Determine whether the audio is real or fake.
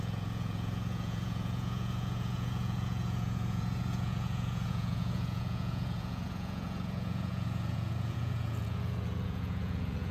fake